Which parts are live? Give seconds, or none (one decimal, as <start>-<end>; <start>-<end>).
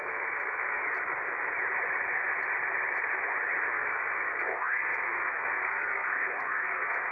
0.8-3.7